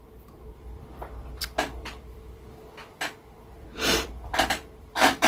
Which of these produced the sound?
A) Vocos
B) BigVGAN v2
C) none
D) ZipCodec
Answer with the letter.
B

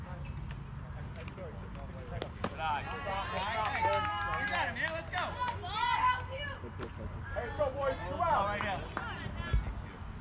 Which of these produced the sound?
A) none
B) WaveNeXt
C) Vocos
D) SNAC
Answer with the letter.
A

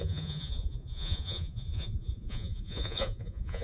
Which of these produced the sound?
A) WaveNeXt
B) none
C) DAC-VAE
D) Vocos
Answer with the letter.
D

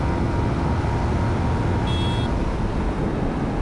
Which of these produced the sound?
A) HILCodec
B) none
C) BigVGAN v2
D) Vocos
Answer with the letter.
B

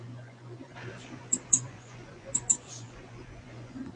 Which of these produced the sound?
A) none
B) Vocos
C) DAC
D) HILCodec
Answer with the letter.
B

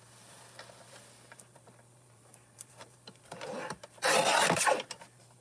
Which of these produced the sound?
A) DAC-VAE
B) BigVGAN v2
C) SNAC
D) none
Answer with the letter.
B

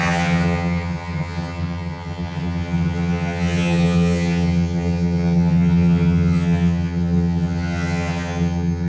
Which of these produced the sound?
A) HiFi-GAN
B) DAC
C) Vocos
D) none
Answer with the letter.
A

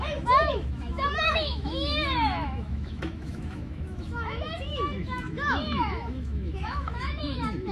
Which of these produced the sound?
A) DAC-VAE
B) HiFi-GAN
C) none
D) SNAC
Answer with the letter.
A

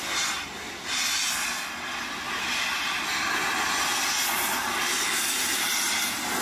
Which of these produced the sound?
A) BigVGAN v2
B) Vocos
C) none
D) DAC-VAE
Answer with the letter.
C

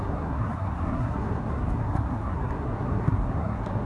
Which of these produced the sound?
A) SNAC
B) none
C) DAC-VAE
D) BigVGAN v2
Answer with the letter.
A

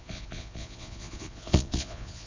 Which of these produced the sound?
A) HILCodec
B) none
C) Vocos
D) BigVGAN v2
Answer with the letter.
C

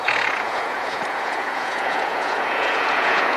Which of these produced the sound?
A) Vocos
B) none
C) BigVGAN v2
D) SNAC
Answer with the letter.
A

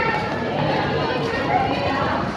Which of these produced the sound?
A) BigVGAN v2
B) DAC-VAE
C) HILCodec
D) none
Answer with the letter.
A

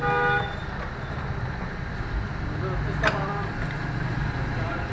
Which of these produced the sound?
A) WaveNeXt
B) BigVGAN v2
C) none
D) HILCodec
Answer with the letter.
C